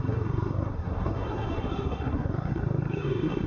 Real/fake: fake